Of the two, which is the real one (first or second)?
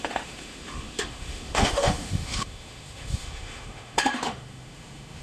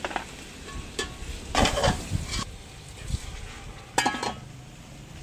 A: second